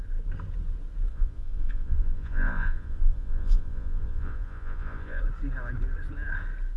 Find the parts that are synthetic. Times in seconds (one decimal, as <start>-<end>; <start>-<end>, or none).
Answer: 1.1-5.2